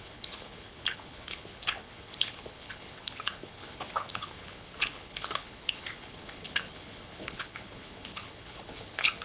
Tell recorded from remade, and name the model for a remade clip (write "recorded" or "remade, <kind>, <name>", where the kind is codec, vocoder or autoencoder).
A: remade, codec, HILCodec